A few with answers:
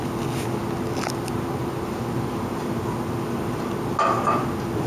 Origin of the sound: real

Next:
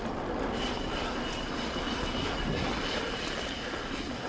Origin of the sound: real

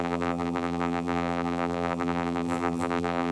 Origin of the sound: fake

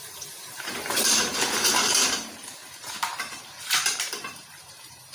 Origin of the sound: fake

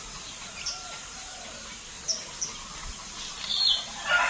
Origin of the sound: real